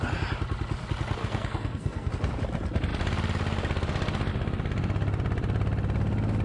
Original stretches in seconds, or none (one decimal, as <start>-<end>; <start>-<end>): 0.0-1.2; 2.1-6.4